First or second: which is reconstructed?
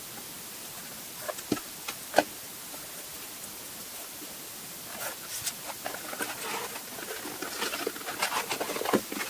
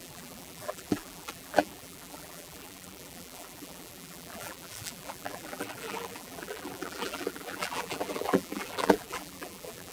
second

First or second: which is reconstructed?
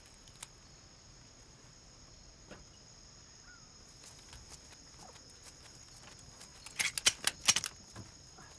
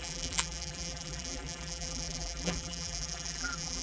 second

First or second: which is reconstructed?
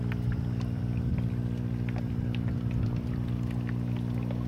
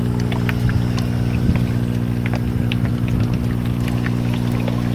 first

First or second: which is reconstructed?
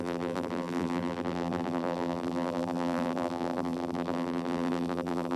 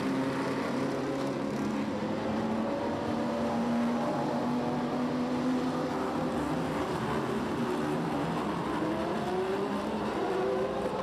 first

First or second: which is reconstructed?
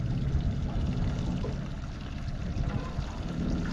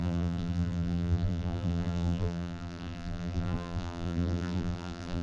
second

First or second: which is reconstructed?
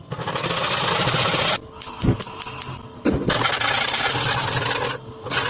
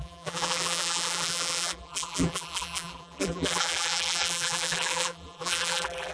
second